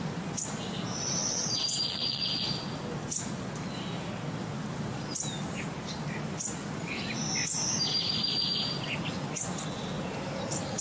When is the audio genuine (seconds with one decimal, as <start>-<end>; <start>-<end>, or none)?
0.0-1.2; 2.4-10.8

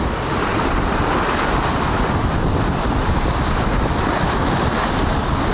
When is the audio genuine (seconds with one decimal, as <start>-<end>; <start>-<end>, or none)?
0.0-5.5